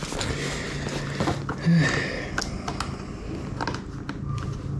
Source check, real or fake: real